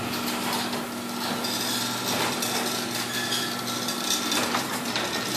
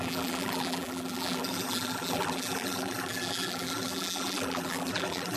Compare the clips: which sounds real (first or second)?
first